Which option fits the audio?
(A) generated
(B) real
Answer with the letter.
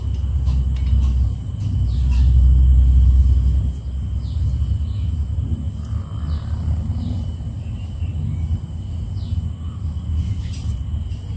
B